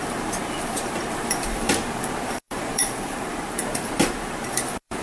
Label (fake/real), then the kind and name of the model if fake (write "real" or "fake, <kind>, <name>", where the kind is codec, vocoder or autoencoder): fake, vocoder, BigVGAN v2